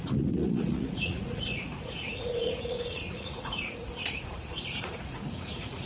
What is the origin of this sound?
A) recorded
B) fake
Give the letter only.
B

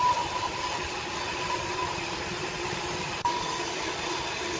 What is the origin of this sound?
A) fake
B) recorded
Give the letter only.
B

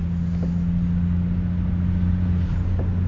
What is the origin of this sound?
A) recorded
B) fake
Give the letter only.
A